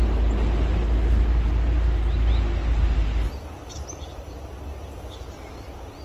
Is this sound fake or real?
real